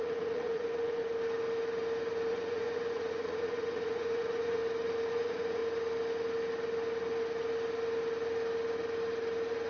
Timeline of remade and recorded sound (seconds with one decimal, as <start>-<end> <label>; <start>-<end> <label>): 0.0-1.0 remade; 1.0-2.3 recorded; 2.3-4.6 remade; 4.6-5.1 recorded; 5.1-5.6 remade; 5.6-9.7 recorded